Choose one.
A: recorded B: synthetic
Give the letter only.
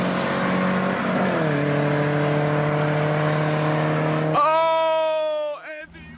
A